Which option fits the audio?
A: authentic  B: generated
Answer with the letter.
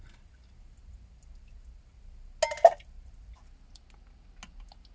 A